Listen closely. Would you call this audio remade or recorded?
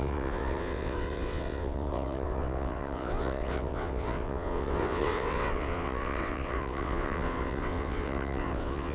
remade